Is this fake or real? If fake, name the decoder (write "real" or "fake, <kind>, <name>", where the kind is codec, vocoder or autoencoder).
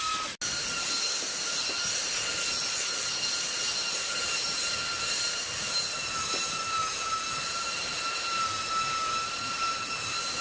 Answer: real